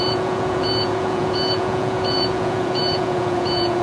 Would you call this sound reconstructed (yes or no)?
yes